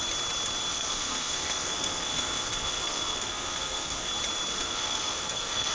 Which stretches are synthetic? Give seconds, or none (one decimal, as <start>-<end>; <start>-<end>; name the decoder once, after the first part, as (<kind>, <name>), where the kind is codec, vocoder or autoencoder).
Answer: 0.7-4.1 (codec, SNAC); 4.5-5.7